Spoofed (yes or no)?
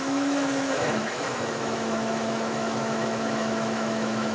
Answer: yes